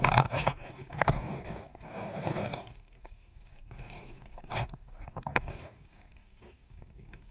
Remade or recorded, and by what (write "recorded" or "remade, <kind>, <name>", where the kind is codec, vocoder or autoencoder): remade, codec, DAC